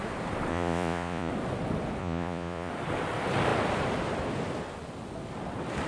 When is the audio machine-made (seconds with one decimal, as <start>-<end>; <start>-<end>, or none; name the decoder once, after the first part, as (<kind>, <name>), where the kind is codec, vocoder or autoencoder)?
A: 0.5-1.3 (vocoder, Vocos); 2.0-2.7